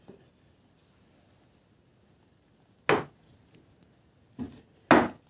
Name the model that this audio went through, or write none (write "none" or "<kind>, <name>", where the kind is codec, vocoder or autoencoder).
none